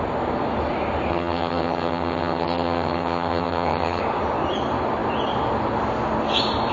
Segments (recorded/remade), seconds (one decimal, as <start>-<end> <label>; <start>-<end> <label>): 0.0-1.1 recorded; 1.1-4.0 remade; 4.0-6.7 recorded